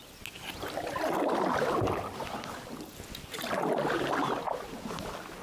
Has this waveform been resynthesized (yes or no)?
no